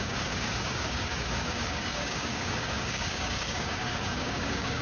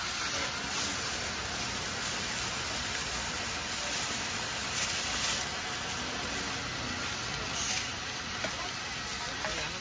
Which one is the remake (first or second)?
first